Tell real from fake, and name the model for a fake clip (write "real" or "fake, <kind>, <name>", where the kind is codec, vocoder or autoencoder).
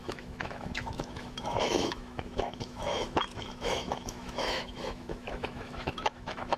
fake, autoencoder, DAC-VAE